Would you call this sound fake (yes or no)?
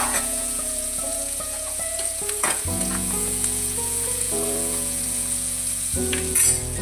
yes